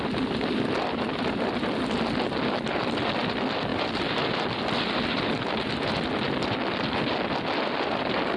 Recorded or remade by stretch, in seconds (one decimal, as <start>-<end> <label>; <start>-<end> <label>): 0.0-3.7 recorded; 3.7-6.1 remade; 6.1-8.4 recorded